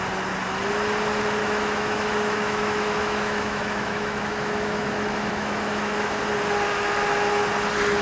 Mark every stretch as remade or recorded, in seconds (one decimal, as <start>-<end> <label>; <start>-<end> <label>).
0.0-1.4 recorded; 1.4-6.2 remade; 6.2-8.0 recorded

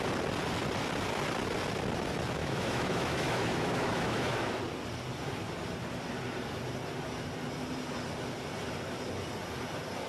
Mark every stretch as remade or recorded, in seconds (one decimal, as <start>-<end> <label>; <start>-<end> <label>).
0.0-2.4 recorded; 2.4-4.6 remade; 4.6-10.1 recorded